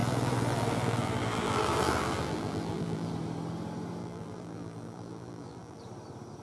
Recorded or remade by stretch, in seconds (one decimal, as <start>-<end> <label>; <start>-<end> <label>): 0.0-3.1 remade; 3.1-4.0 recorded; 4.0-5.8 remade; 5.8-6.4 recorded